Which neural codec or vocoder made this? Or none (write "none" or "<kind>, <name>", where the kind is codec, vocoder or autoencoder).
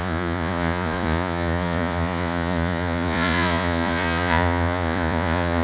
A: vocoder, Vocos